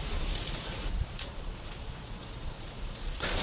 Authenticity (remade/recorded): remade